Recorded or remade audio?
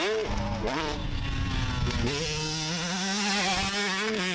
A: recorded